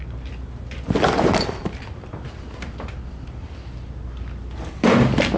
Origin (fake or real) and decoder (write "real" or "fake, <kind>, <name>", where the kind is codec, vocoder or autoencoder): real